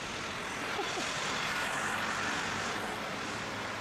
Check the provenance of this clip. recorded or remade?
remade